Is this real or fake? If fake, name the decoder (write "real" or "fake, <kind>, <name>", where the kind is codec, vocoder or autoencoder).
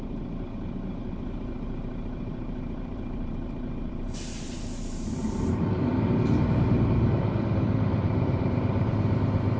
fake, vocoder, BigVGAN v2